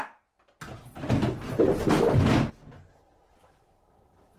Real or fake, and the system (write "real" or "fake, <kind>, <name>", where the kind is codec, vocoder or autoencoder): real